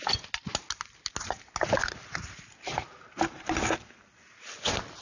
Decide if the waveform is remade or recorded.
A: recorded